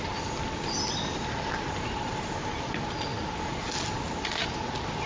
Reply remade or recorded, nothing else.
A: recorded